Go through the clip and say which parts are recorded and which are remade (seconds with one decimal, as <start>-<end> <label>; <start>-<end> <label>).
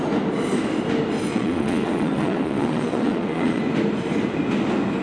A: 0.0-1.3 recorded; 1.3-3.6 remade; 3.6-5.0 recorded